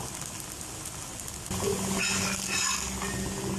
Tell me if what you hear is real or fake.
real